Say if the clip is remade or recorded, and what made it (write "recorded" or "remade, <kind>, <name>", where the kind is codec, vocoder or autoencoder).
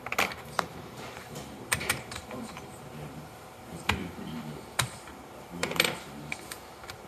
remade, vocoder, BigVGAN v2